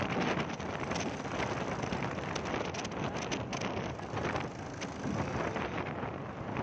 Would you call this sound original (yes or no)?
yes